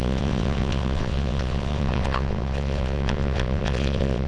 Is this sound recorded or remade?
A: remade